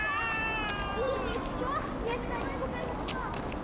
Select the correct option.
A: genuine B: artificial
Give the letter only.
A